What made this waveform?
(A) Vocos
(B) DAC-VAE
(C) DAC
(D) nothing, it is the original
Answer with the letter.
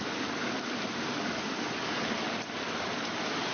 D